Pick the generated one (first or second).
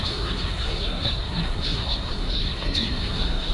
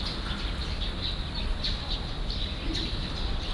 first